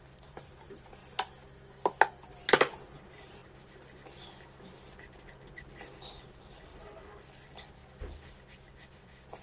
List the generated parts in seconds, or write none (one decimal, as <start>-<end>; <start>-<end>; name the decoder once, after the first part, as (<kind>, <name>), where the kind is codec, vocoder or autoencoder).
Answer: 0.0-1.0 (vocoder, BigVGAN v2); 3.0-3.4; 6.3-6.7; 7.3-7.8; 8.8-9.4